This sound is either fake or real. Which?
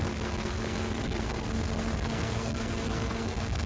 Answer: fake